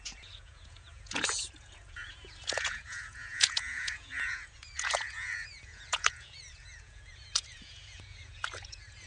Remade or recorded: remade